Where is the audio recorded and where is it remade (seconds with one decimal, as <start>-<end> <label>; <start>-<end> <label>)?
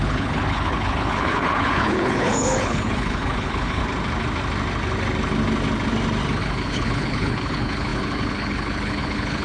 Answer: 0.0-3.8 remade; 3.8-6.4 recorded; 6.4-9.4 remade